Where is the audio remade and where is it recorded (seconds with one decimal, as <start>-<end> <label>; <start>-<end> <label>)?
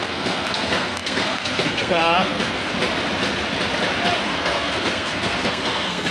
0.0-2.7 remade; 2.7-4.2 recorded; 4.2-6.1 remade